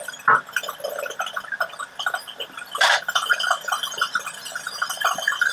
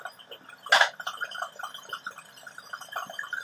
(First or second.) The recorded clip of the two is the second